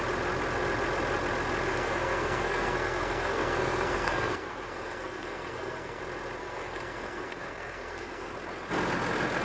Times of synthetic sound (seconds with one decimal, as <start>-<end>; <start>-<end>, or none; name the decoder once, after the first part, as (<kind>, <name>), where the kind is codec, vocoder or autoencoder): 1.7-6.0 (codec, SNAC); 6.4-8.3